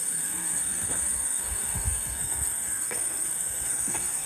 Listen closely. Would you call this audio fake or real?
fake